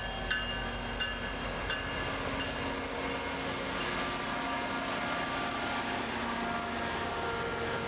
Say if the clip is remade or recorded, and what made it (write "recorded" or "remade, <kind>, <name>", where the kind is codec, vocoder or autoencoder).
recorded